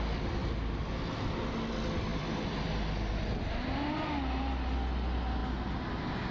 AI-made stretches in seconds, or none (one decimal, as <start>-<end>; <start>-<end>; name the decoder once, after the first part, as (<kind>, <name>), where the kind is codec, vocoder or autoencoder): 2.1-2.7 (vocoder, BigVGAN v2)